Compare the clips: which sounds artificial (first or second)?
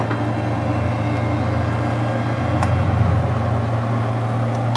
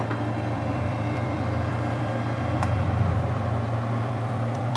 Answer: second